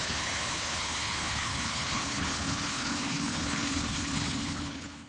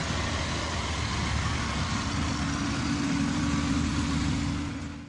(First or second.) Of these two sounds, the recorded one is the second